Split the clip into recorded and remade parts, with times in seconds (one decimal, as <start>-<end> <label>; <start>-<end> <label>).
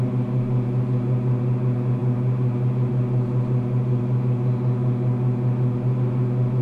0.0-6.6 recorded